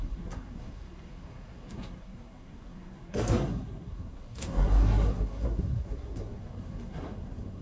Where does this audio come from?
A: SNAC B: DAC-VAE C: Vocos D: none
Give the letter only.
A